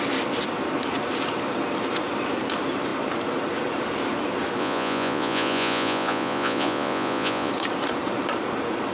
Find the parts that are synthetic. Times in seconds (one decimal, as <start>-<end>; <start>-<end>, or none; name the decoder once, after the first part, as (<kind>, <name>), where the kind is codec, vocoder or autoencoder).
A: 4.6-7.5 (vocoder, Vocos)